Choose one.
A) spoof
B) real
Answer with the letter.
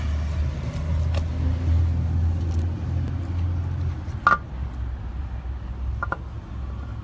B